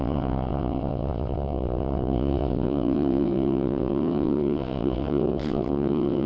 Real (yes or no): no